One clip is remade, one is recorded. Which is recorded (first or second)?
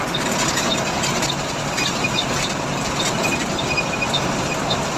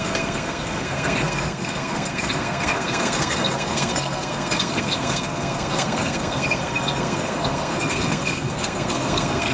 first